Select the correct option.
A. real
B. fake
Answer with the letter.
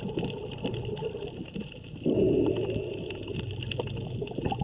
A